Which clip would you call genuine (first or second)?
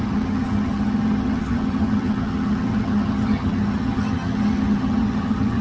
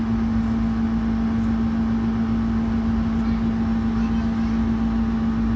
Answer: second